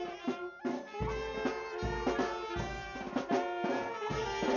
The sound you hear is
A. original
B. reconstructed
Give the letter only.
A